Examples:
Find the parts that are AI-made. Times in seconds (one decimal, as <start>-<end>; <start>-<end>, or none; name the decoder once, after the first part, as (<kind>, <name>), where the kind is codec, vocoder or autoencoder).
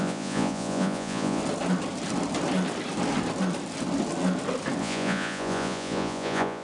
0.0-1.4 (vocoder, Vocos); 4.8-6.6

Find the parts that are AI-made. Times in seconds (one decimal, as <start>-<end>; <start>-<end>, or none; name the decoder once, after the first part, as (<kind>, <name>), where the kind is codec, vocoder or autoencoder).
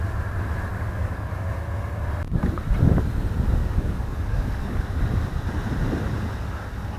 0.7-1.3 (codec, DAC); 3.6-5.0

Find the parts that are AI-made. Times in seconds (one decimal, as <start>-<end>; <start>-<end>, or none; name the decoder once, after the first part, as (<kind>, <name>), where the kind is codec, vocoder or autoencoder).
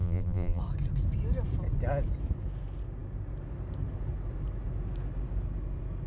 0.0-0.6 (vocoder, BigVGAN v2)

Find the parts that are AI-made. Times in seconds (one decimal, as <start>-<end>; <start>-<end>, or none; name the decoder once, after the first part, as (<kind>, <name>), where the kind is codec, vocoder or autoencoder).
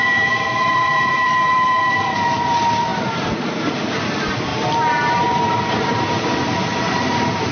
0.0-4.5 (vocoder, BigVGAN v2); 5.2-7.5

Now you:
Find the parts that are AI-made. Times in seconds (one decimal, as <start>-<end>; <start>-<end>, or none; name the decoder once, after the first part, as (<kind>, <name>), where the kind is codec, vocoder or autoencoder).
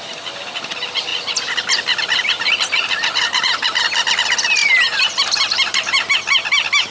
4.6-6.0 (vocoder, BigVGAN v2)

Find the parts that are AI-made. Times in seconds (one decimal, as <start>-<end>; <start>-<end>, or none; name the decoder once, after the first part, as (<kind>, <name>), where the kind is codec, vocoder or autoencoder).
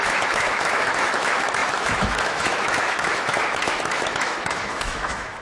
0.0-5.4 (autoencoder, DAC-VAE)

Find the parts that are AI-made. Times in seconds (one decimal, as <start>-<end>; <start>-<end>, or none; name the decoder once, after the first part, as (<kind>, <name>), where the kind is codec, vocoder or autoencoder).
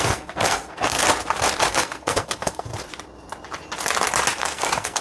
0.0-1.0 (codec, SNAC); 1.7-2.7; 4.4-5.0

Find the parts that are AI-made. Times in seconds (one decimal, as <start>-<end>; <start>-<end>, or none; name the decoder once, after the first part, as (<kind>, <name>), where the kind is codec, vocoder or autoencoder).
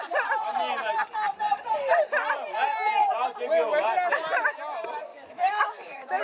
5.1-6.2 (autoencoder, DAC-VAE)